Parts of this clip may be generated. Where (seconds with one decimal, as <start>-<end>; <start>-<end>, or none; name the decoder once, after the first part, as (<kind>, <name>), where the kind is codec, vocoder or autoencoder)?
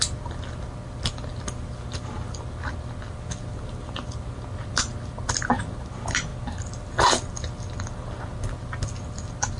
none